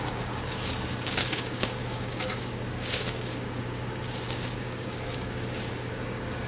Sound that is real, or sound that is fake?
fake